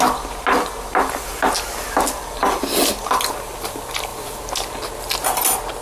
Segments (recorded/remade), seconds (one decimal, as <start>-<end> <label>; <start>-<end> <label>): 0.0-5.8 recorded